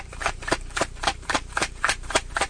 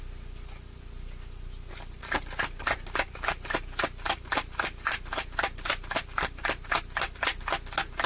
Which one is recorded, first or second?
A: second